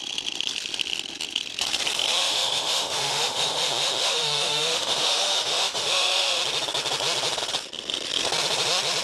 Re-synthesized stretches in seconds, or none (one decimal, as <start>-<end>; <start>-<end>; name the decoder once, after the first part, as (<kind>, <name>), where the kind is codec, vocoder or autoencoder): 2.2-6.4 (autoencoder, DAC-VAE)